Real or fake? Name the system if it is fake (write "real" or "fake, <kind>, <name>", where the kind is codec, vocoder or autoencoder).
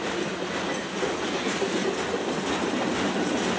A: real